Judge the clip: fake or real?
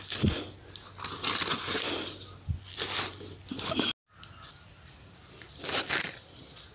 real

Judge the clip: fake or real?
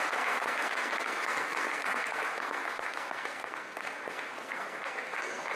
fake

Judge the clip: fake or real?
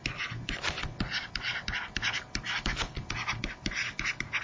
real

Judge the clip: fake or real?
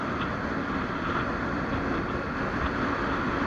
real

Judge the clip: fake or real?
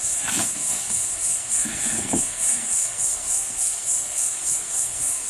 fake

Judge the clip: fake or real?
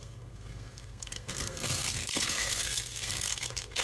fake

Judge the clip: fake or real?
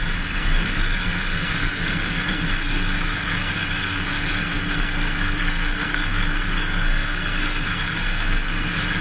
fake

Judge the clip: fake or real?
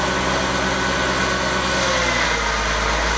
real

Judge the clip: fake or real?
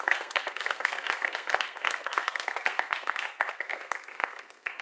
fake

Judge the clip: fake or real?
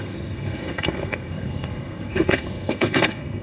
fake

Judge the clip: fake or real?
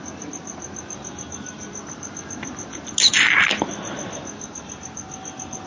real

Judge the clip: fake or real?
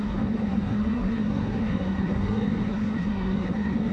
fake